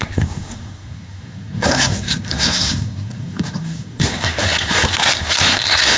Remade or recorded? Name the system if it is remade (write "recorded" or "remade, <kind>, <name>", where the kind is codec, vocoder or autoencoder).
remade, codec, SNAC